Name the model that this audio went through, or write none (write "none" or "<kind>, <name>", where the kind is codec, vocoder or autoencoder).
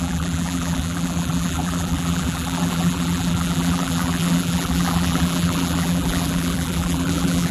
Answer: vocoder, BigVGAN v2